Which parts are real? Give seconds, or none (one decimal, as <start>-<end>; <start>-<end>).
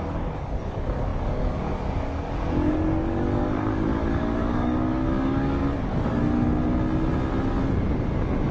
5.6-8.5